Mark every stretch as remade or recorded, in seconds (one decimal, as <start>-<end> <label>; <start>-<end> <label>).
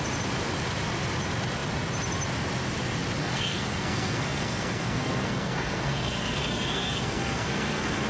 0.0-3.2 recorded; 3.2-8.1 remade